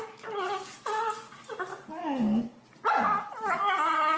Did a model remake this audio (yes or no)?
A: no